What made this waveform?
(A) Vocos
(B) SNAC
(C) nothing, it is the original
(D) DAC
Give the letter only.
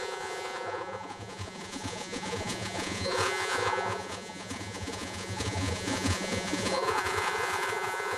A